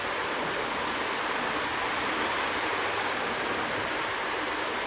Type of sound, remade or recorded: recorded